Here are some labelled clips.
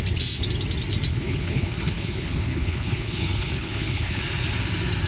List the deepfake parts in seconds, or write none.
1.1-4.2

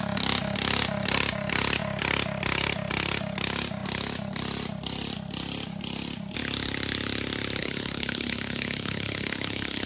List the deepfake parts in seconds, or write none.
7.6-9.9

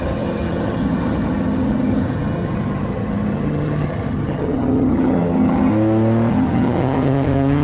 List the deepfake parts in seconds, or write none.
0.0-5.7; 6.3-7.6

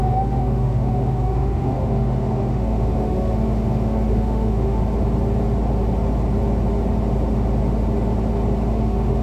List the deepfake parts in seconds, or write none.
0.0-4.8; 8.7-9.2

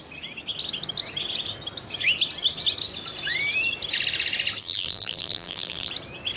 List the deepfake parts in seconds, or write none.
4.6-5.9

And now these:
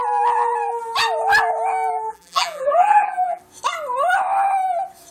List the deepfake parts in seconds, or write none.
2.1-3.4

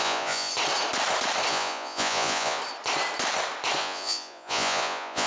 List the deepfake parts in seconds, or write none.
0.0-0.5; 1.5-2.6; 3.8-5.3

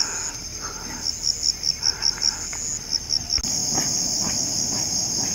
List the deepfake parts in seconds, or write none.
none